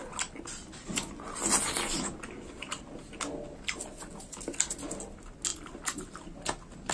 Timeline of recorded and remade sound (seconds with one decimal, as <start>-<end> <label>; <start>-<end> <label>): 0.0-6.9 recorded